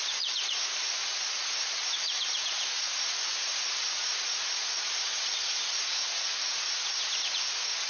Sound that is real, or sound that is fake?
fake